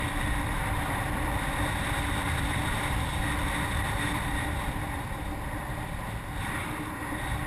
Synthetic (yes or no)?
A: yes